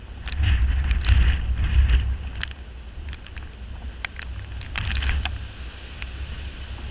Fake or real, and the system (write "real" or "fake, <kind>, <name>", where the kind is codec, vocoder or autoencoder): real